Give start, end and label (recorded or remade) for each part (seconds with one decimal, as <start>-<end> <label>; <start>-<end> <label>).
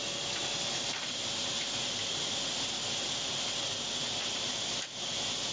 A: 0.0-5.5 recorded